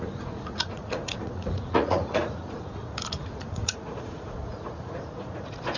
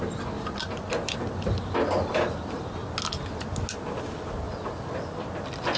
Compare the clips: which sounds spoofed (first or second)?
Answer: first